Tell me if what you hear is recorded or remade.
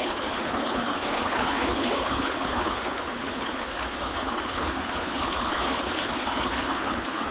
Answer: remade